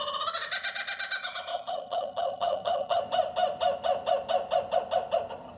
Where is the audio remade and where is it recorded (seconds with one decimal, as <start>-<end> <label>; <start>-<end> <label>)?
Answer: 0.0-1.5 recorded; 1.5-3.0 remade; 3.0-5.6 recorded